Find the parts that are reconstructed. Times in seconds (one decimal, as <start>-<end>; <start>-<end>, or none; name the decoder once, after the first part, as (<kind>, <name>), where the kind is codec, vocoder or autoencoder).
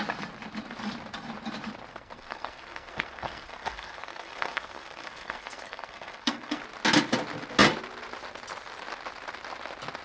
1.9-6.6 (codec, SNAC)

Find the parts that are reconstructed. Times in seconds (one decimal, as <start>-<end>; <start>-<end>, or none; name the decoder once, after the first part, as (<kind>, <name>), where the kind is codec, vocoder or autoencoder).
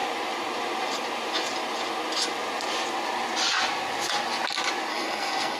4.9-5.6 (codec, SNAC)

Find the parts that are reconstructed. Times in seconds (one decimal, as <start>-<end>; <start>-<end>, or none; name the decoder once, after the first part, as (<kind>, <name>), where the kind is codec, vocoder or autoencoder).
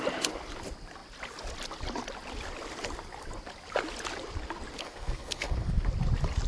4.8-5.8 (codec, SNAC)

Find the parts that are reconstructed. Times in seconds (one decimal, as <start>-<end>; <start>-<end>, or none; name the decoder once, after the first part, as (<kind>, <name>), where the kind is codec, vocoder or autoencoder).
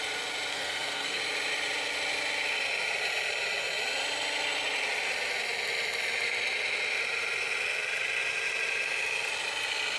0.5-1.2 (codec, SNAC)